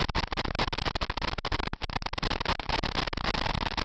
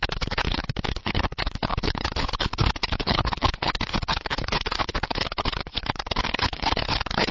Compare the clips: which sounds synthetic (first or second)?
second